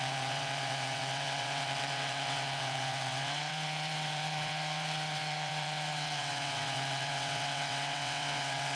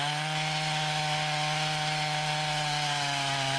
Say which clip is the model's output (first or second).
first